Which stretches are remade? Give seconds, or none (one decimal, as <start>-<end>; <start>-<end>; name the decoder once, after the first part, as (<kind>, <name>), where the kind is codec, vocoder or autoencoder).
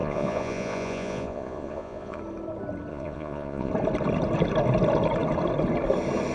0.0-2.2 (vocoder, Vocos); 2.9-3.7